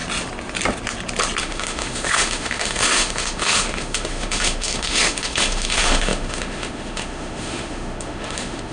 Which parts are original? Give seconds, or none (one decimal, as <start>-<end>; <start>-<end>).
0.0-1.4